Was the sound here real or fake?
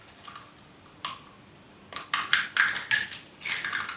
real